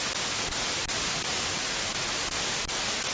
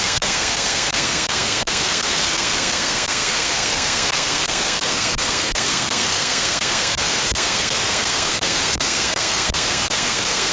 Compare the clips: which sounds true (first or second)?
first